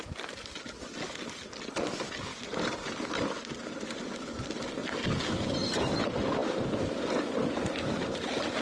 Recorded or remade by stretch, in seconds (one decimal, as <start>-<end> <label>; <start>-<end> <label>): 0.0-8.6 recorded